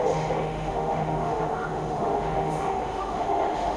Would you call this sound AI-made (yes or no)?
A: yes